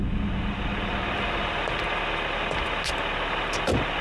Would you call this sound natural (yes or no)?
yes